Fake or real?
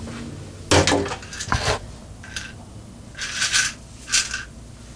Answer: real